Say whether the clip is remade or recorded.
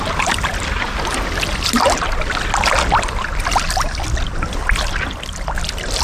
recorded